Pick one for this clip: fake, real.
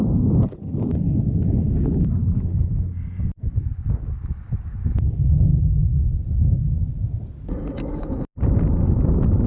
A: real